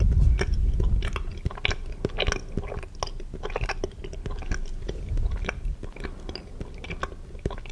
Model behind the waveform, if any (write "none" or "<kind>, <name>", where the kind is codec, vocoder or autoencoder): none